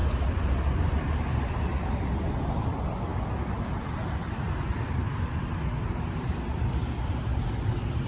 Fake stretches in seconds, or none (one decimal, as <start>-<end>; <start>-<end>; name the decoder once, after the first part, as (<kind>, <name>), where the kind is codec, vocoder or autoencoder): 0.8-8.1 (vocoder, BigVGAN v2)